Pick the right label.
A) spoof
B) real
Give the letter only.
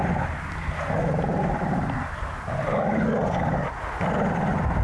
B